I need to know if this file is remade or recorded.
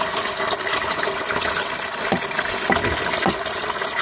recorded